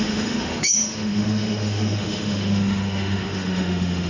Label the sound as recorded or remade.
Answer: remade